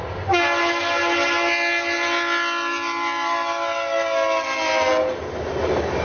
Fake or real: real